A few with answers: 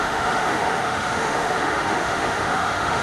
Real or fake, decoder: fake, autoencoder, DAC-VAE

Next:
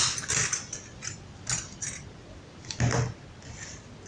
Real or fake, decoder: real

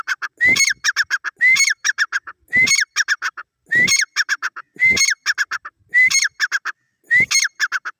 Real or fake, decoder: real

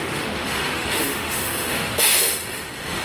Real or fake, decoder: fake, autoencoder, DAC-VAE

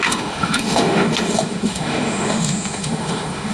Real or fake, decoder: fake, autoencoder, DAC-VAE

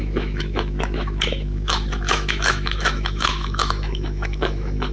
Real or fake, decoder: fake, autoencoder, DAC-VAE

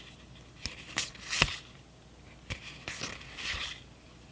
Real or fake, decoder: real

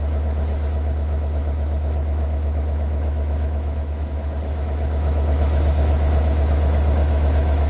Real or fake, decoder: fake, autoencoder, DAC-VAE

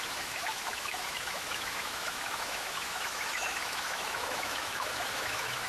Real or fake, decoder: fake, autoencoder, DAC-VAE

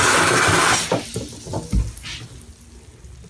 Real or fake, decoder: real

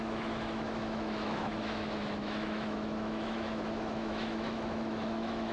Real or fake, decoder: fake, autoencoder, DAC-VAE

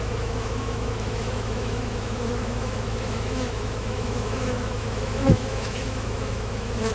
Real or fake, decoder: fake, autoencoder, DAC-VAE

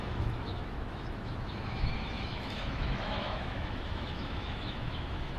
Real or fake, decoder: fake, autoencoder, DAC-VAE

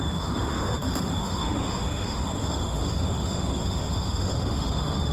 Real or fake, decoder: fake, autoencoder, DAC-VAE